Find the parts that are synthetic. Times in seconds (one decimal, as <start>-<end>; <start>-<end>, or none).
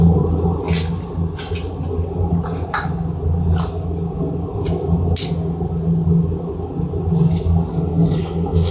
7.7-8.7